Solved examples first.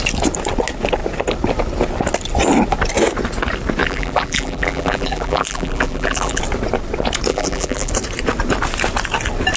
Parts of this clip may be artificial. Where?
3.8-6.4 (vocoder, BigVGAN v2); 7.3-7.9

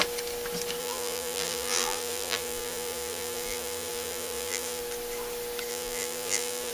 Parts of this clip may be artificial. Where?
0.8-4.8 (vocoder, BigVGAN v2); 5.7-6.7

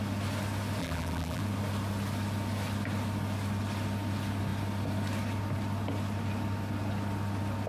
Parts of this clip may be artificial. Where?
0.8-1.4 (vocoder, BigVGAN v2)

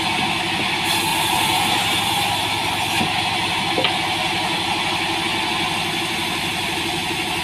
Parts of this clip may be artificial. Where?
1.1-2.7 (vocoder, BigVGAN v2)

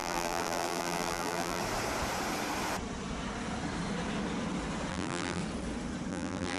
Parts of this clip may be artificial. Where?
0.0-1.6 (vocoder, BigVGAN v2); 4.9-5.4; 6.1-6.6

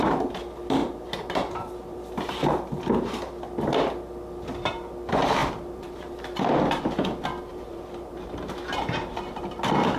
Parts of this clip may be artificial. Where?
0.8-2.8 (vocoder, BigVGAN v2); 5.4-6.8; 7.5-9.6

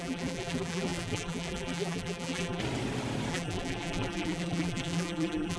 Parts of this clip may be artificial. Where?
0.0-2.6 (vocoder, BigVGAN v2); 3.3-5.6

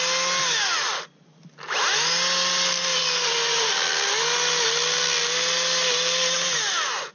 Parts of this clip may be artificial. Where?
2.9-3.7 (vocoder, BigVGAN v2)